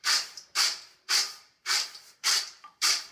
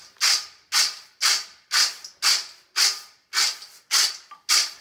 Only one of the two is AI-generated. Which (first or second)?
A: first